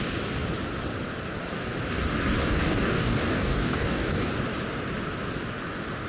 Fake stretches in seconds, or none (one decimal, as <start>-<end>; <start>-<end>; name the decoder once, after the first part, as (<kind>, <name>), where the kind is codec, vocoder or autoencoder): 2.4-4.3 (codec, DAC)

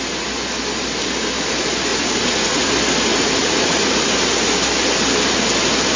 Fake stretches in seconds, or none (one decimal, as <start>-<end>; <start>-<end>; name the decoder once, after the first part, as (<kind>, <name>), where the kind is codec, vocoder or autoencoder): 1.9-2.7 (vocoder, Vocos); 3.1-4.0

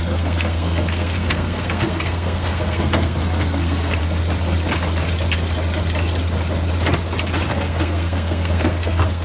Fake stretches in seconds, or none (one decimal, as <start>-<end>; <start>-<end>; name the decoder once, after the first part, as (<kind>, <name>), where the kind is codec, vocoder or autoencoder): 0.0-4.0 (codec, SNAC); 7.5-9.2